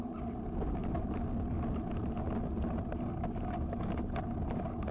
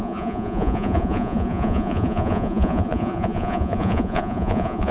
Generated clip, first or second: second